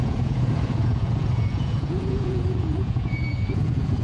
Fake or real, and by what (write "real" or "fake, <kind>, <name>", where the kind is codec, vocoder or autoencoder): fake, vocoder, Vocos